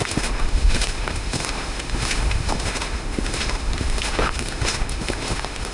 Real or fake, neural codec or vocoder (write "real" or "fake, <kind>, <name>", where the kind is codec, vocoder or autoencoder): fake, autoencoder, DAC-VAE